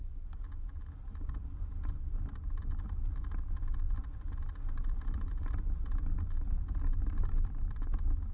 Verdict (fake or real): real